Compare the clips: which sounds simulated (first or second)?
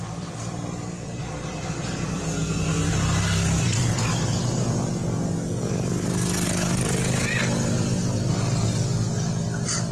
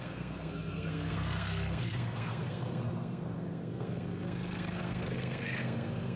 second